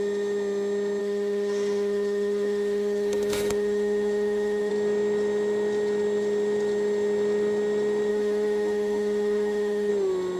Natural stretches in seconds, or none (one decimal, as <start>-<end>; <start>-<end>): 0.0-1.0; 4.7-8.1; 9.9-10.4